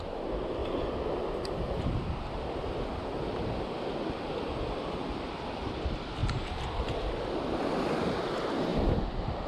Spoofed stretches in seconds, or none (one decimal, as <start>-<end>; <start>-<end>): 0.0-0.6; 3.9-8.7